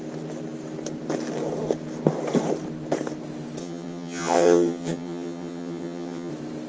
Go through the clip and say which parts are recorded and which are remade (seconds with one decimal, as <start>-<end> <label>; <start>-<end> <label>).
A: 0.0-3.6 recorded; 3.6-6.3 remade; 6.3-6.7 recorded